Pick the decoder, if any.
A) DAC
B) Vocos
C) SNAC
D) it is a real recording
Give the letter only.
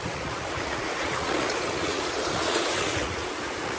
B